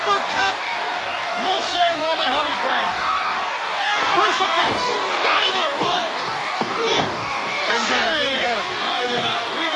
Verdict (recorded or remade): remade